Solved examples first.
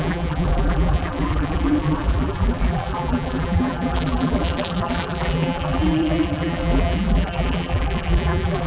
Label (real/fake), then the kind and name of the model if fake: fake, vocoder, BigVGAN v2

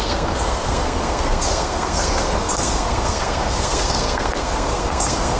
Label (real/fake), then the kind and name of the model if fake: fake, codec, SNAC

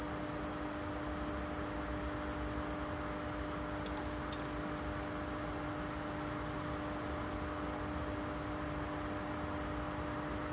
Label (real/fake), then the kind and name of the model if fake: real